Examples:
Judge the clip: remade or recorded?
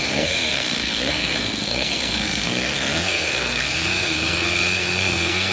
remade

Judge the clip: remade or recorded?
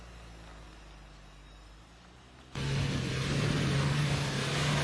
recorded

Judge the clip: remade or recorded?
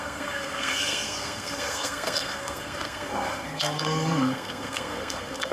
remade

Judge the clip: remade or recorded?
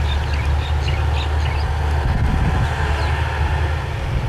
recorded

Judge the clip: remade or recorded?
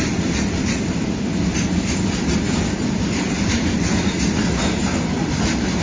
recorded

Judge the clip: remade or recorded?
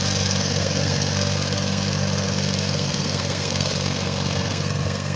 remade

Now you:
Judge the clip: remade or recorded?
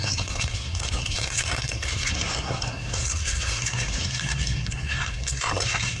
remade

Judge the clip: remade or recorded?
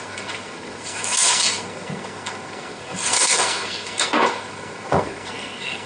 remade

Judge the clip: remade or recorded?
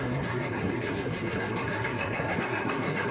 remade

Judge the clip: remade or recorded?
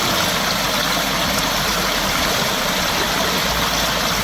recorded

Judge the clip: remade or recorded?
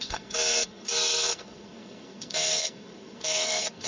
remade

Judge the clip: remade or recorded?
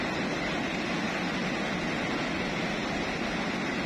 recorded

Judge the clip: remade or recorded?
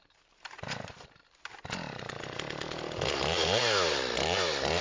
recorded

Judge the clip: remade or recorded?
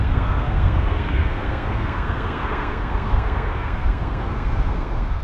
remade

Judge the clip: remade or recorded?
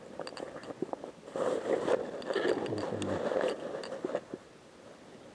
recorded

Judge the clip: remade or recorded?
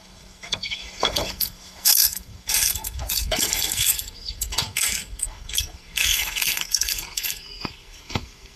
remade